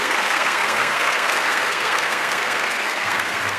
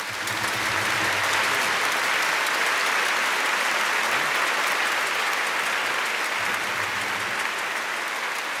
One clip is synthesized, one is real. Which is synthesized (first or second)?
first